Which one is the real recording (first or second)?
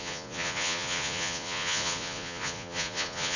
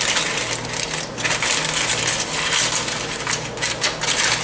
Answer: second